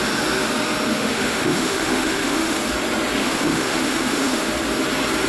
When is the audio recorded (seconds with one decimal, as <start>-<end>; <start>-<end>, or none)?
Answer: 0.0-0.9; 2.6-3.2; 4.5-5.3